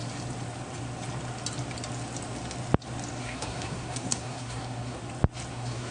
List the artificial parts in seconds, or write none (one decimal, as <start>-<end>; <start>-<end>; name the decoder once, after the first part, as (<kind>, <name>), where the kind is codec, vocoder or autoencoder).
3.2-5.0 (codec, SNAC); 5.5-5.9